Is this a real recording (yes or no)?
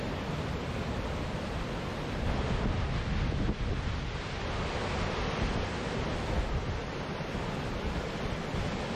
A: yes